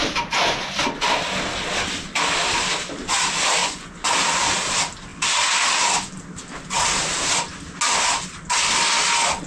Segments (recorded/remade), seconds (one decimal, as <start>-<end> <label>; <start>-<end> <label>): 0.0-3.6 recorded; 3.6-4.1 remade; 4.1-9.5 recorded